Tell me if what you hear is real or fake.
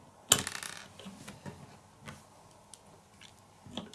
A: real